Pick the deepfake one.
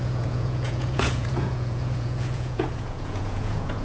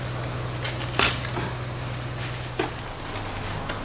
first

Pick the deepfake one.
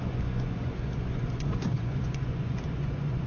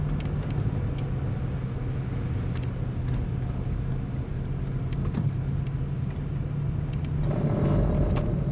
first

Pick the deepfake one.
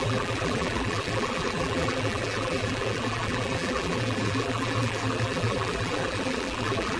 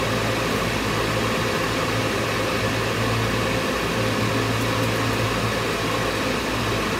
first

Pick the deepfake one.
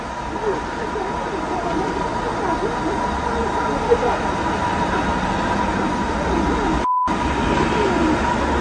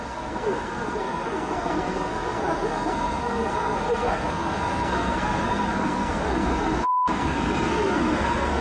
second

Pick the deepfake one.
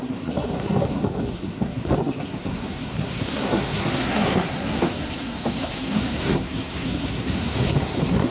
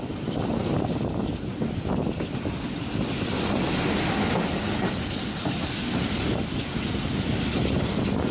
first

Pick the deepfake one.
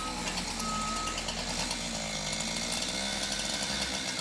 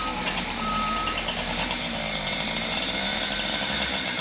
second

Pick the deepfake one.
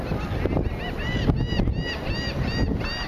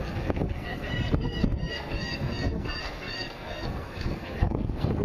second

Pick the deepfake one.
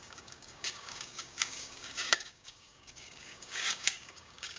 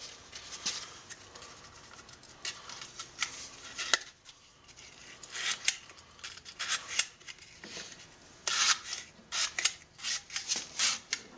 first